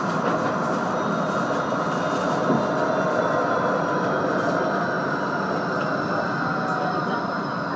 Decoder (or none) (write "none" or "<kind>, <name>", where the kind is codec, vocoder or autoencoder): none